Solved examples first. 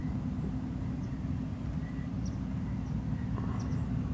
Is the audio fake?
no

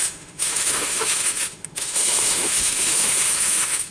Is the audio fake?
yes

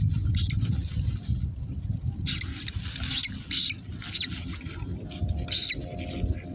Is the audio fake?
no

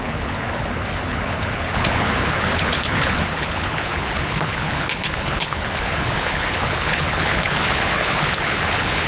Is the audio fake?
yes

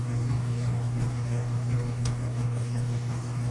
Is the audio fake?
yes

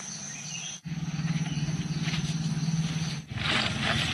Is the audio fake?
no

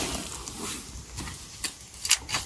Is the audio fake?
no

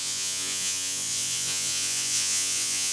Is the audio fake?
yes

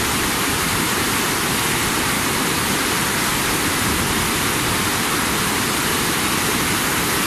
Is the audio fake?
no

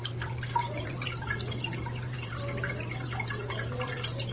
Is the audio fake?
yes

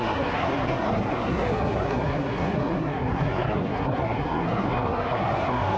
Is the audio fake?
yes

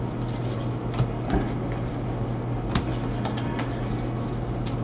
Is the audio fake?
no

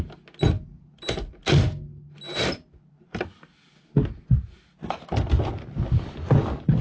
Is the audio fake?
no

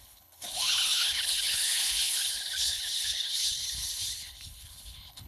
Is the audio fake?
yes